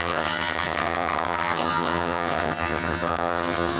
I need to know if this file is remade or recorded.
remade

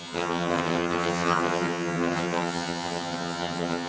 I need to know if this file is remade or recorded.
remade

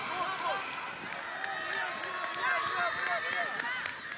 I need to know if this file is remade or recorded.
recorded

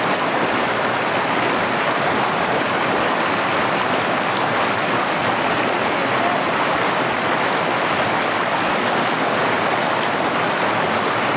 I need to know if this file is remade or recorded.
recorded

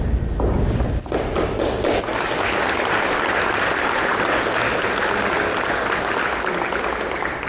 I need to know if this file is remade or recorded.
recorded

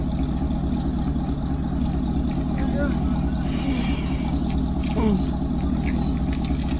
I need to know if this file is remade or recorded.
recorded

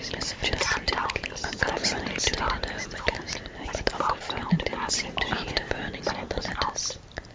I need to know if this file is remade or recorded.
recorded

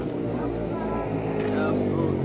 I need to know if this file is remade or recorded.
recorded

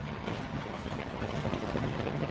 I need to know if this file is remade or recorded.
remade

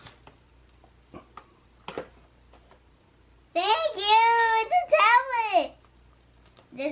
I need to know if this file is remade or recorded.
recorded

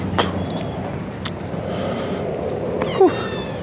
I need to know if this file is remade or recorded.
recorded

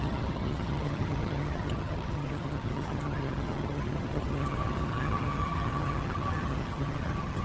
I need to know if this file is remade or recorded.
remade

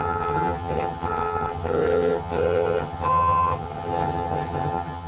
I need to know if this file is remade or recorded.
remade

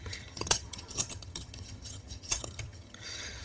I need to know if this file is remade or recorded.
remade